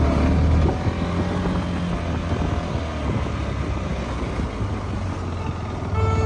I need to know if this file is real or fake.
real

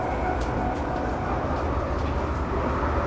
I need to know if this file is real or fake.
real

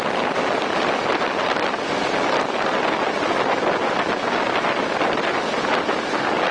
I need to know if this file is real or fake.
real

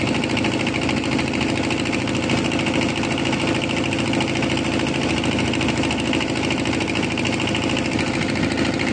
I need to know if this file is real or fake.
real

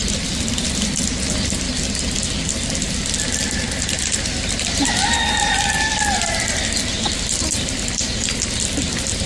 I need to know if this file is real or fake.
real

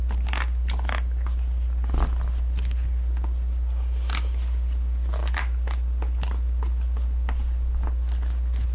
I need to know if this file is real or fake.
real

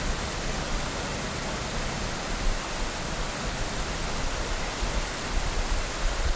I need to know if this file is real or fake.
real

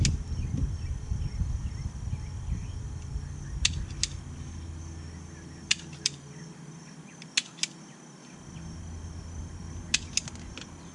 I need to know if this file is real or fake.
real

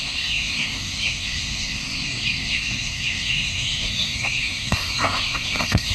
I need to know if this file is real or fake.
fake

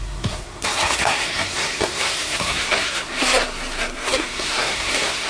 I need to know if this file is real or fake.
fake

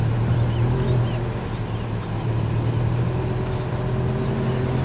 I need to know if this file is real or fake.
real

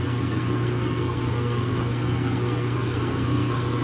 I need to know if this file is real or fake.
fake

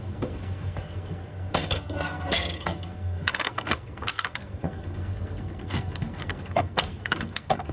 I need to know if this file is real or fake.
fake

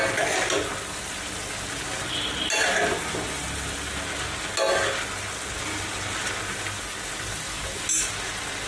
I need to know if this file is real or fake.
real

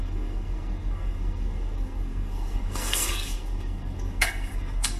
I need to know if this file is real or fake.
fake